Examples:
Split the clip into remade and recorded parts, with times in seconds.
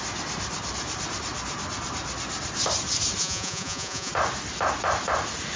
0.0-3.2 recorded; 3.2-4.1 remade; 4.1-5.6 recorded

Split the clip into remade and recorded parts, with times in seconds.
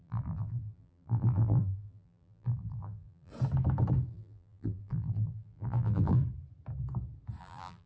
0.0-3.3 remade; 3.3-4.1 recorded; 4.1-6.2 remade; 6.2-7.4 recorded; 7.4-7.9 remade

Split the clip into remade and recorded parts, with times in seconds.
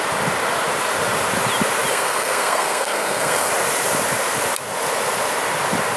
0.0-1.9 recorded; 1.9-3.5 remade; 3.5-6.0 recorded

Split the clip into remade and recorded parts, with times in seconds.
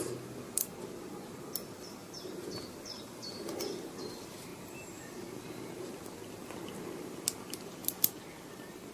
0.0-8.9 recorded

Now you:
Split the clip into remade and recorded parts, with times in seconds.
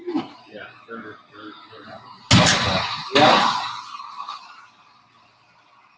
0.0-6.0 recorded